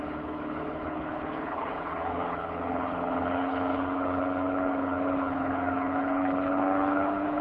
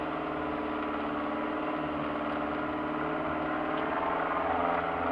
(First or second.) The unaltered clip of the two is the second